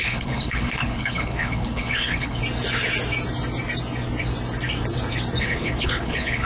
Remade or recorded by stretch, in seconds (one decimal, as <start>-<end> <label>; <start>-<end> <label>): 0.0-2.4 remade; 2.4-5.4 recorded; 5.4-6.4 remade